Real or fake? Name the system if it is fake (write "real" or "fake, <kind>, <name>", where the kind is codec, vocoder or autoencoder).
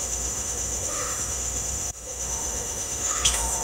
fake, autoencoder, DAC-VAE